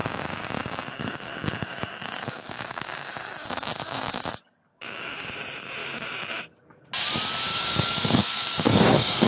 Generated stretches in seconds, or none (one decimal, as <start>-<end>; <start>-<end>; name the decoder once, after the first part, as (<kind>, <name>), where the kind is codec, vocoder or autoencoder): 0.0-3.1 (codec, DAC); 4.7-5.3; 5.8-6.4; 7.5-9.3